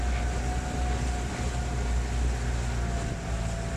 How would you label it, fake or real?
real